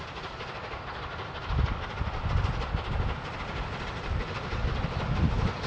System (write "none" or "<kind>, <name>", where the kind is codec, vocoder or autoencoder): none